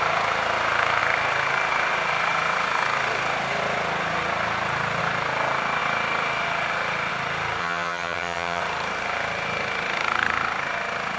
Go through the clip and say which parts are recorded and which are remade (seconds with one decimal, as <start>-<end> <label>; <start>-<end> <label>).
0.0-7.6 recorded; 7.6-8.6 remade; 8.6-11.2 recorded